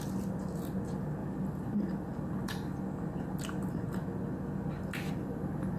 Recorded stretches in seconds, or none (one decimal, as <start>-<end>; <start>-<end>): 0.0-5.8